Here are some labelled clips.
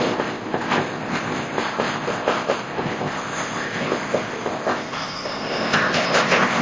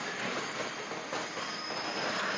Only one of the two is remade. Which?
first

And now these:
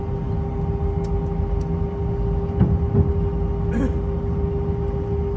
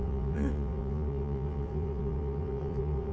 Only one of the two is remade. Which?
second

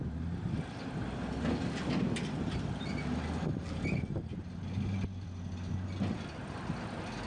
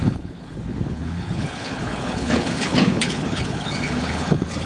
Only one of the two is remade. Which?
second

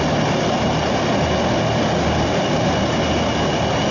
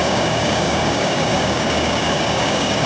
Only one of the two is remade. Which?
second